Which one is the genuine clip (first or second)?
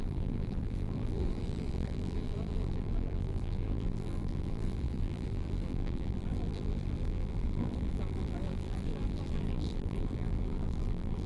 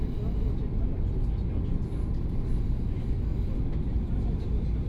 second